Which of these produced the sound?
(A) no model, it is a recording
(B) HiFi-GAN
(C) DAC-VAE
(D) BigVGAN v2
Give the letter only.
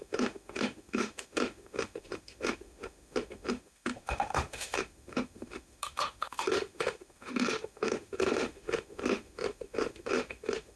C